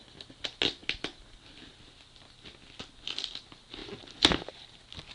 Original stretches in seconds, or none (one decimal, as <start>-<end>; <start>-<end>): 0.0-5.1